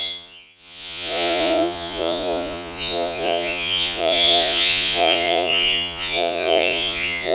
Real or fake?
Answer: fake